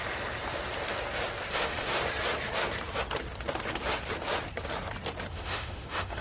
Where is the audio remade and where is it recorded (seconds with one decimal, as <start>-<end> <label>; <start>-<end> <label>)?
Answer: 0.0-1.5 recorded; 1.5-1.9 remade; 1.9-5.3 recorded; 5.3-6.2 remade